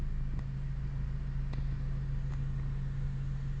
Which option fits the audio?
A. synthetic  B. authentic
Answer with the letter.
B